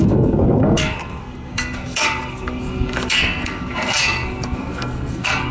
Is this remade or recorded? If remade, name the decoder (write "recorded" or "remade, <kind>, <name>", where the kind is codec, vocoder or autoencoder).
remade, codec, SNAC